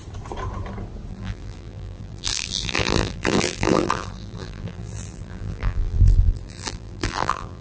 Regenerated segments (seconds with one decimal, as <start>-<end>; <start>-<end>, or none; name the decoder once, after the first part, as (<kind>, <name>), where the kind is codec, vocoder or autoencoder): 1.1-7.6 (vocoder, BigVGAN v2)